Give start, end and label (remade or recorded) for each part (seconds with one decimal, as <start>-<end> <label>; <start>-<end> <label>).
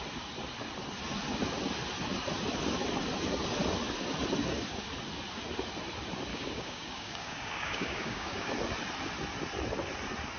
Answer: 0.0-6.3 recorded; 6.3-8.5 remade; 8.5-10.4 recorded